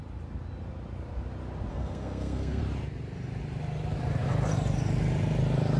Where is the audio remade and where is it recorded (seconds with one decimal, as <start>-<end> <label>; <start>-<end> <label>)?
0.0-1.7 recorded; 1.7-2.6 remade; 2.6-5.8 recorded